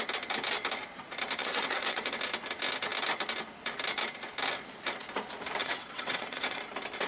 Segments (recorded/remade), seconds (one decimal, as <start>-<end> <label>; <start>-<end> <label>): 0.0-1.4 recorded; 1.4-2.2 remade; 2.2-5.6 recorded; 5.6-6.6 remade; 6.6-7.1 recorded